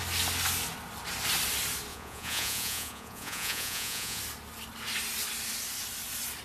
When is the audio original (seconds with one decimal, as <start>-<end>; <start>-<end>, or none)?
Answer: 0.0-1.9; 4.2-6.4